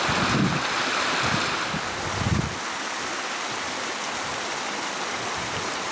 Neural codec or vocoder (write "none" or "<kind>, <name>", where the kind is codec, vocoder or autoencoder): none